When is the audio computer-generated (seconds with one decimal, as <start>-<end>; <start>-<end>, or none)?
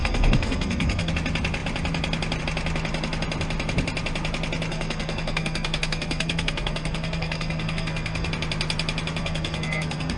0.0-1.1; 4.7-8.3; 9.2-10.2